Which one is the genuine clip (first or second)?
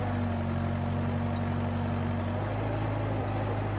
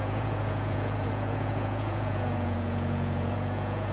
first